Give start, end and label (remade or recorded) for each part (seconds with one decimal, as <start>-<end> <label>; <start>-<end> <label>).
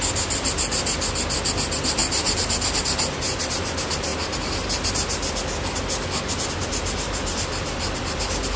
0.0-2.0 recorded; 2.0-2.8 remade; 2.8-8.6 recorded